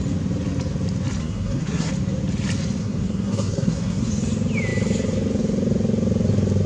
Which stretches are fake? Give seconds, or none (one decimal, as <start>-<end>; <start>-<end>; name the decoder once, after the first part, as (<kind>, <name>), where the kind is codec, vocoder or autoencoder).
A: 1.2-1.9 (codec, SNAC); 2.8-4.1